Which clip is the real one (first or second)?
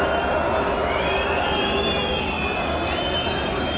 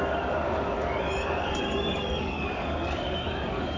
first